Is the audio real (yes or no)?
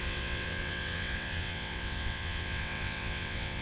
no